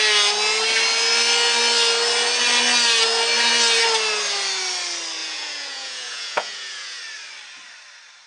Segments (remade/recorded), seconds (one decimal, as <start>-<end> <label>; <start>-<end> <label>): 0.0-5.2 recorded; 5.2-7.0 remade; 7.0-8.3 recorded